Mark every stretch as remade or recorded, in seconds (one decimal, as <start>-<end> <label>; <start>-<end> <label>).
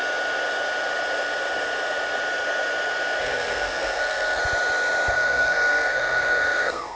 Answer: 0.0-3.2 recorded; 3.2-4.4 remade; 4.4-5.1 recorded; 5.1-7.0 remade